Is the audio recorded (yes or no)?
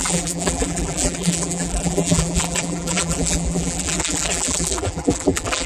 no